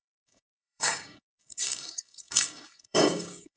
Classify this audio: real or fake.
fake